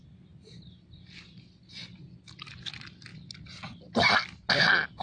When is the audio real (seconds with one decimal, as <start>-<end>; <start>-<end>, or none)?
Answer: 0.0-5.0